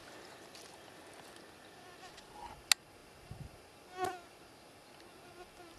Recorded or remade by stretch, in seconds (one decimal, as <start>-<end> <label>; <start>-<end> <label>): 0.0-5.8 recorded